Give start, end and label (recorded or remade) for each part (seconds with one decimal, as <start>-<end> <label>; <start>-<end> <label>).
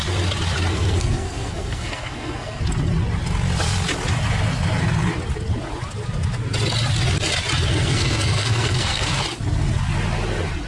0.0-0.7 recorded; 0.7-2.6 remade; 2.6-7.7 recorded; 7.7-9.2 remade; 9.2-10.7 recorded